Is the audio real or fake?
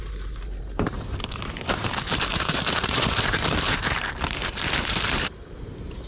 fake